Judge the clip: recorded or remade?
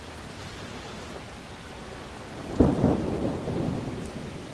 recorded